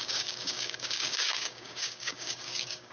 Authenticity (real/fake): fake